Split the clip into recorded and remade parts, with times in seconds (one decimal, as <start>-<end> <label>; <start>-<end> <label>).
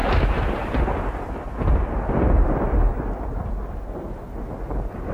0.0-0.8 remade; 0.8-5.1 recorded